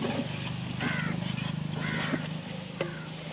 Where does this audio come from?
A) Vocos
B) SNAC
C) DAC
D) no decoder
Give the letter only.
D